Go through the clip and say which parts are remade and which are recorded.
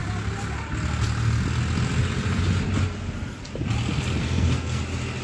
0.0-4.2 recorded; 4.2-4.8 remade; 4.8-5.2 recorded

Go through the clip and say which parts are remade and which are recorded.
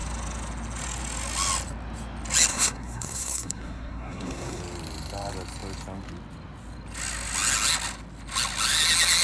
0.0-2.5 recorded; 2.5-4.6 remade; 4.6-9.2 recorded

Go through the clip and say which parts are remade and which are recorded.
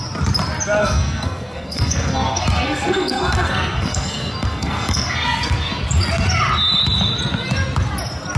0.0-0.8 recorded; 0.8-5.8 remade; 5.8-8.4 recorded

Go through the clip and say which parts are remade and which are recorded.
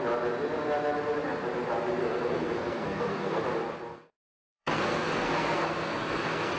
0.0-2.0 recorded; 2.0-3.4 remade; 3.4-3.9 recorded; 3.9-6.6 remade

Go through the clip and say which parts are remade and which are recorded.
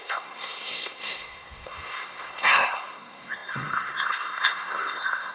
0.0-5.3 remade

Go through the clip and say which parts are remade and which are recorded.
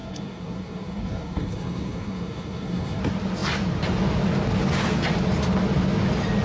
0.0-3.0 remade; 3.0-6.4 recorded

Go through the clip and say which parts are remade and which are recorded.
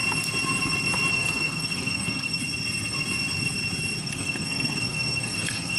0.0-1.1 recorded; 1.1-2.4 remade; 2.4-4.0 recorded; 4.0-5.8 remade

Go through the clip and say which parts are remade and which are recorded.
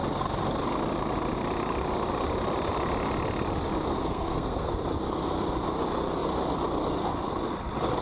0.0-3.9 recorded; 3.9-4.7 remade; 4.7-8.0 recorded